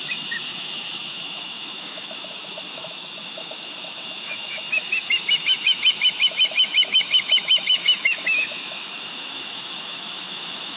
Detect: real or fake fake